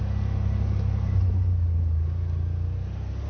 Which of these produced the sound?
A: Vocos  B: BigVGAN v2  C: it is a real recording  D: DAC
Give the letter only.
C